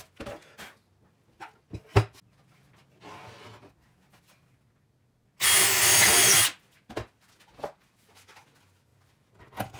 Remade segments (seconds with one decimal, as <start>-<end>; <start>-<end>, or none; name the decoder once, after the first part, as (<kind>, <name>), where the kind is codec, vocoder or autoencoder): none